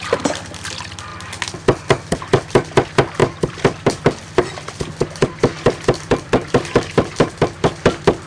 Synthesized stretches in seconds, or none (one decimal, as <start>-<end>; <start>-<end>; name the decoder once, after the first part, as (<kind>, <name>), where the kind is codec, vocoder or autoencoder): 3.2-4.0 (vocoder, BigVGAN v2); 5.2-7.7